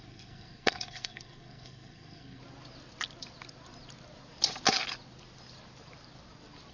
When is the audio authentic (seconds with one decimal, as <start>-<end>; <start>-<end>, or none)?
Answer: 2.4-6.7